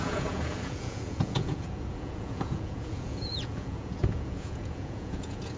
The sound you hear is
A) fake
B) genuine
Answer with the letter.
A